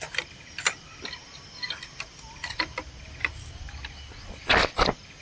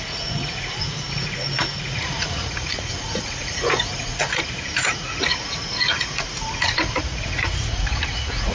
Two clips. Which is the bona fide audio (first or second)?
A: first